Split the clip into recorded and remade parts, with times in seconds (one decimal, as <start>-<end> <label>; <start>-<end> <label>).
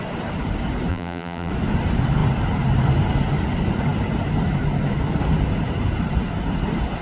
0.0-0.9 recorded; 0.9-1.5 remade; 1.5-7.0 recorded